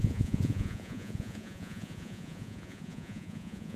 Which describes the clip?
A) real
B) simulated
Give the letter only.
B